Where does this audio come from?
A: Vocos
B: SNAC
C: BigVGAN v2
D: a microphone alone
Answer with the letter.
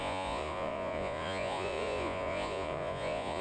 A